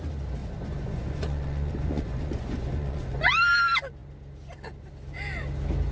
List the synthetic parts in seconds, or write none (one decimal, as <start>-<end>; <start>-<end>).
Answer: 0.4-3.3